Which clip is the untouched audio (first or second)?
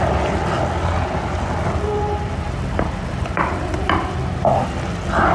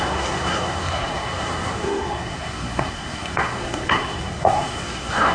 first